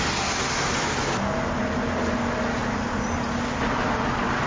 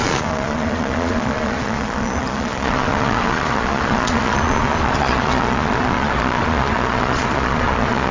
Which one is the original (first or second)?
first